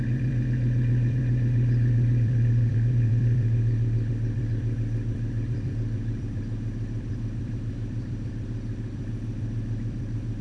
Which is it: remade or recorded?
remade